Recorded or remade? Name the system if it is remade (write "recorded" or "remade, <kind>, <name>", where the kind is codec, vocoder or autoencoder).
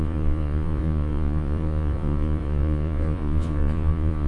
remade, vocoder, Vocos